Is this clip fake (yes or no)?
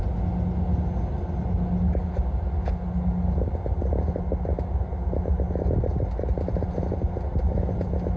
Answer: no